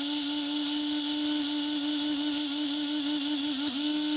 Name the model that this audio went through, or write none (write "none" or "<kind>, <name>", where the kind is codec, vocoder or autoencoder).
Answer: none